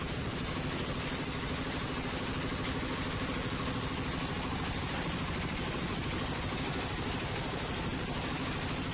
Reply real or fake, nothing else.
real